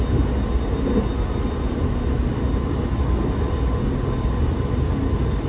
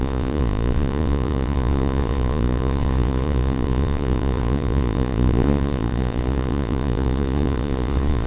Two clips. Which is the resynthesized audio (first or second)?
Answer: second